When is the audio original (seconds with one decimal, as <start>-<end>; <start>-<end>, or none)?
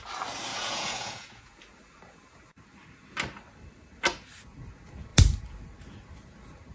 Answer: 0.0-0.5; 1.6-6.7